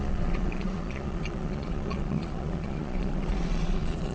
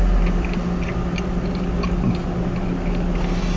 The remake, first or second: first